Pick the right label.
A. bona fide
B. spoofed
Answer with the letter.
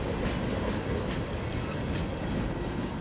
A